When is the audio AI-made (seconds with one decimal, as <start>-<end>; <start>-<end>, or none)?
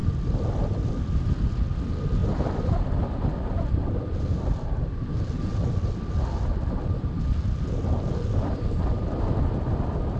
none